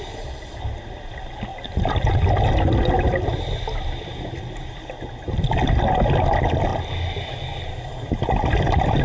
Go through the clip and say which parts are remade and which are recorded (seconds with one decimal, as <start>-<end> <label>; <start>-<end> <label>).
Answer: 0.0-1.5 recorded; 1.5-2.2 remade; 2.2-9.0 recorded